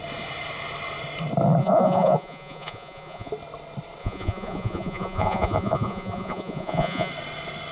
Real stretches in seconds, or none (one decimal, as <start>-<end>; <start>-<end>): 0.0-1.6; 3.3-4.0; 7.1-7.7